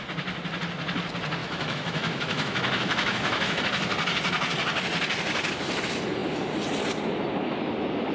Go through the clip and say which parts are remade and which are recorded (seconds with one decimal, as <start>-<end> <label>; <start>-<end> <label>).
0.0-1.4 recorded; 1.4-3.6 remade; 3.6-8.1 recorded